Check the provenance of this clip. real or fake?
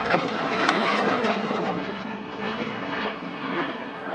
fake